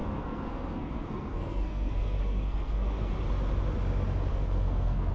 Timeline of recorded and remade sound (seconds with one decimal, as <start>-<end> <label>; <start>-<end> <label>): 0.0-3.1 remade; 3.1-4.3 recorded; 4.3-5.1 remade